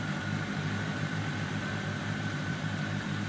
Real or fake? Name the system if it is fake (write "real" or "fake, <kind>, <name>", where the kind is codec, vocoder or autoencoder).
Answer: fake, vocoder, BigVGAN v2